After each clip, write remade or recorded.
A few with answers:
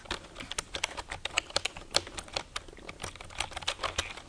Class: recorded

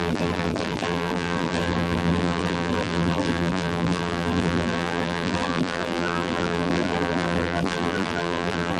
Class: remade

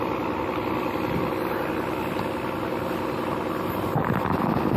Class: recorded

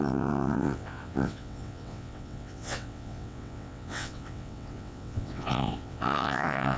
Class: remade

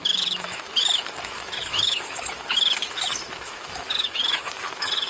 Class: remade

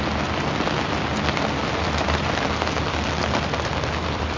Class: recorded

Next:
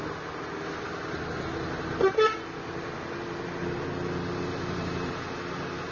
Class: recorded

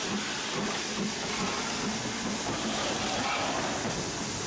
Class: recorded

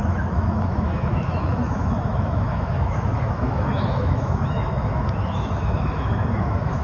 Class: remade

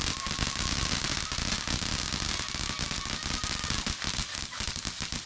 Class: recorded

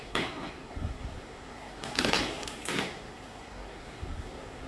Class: remade